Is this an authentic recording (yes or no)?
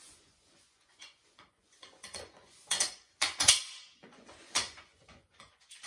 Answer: no